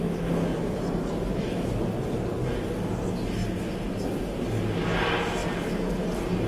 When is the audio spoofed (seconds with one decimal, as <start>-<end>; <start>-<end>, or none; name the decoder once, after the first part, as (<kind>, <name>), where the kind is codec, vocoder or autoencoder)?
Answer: none